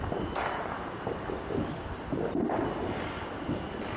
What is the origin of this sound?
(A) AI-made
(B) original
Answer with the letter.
B